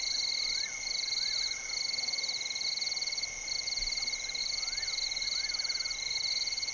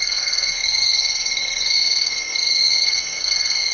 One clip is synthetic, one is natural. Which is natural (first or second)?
first